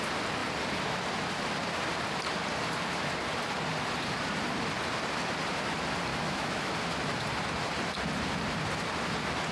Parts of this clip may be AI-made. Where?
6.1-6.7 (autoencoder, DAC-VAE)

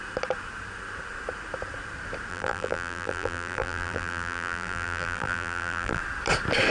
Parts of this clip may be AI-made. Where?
2.3-6.0 (vocoder, BigVGAN v2)

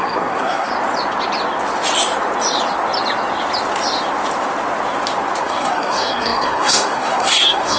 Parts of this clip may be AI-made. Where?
0.0-0.7 (codec, SNAC); 5.4-7.8

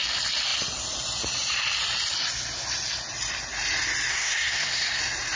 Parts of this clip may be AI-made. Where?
4.1-5.0 (codec, SNAC)